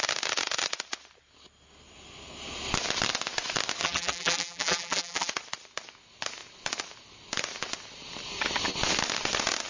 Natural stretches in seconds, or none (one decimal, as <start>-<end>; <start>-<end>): 0.0-3.8; 5.3-9.7